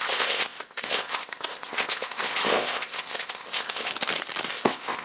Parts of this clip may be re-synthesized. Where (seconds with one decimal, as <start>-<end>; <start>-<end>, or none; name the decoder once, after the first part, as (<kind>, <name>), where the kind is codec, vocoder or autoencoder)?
0.0-3.9 (codec, ZipCodec); 4.5-5.0